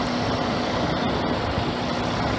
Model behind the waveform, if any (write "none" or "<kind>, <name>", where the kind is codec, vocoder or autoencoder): none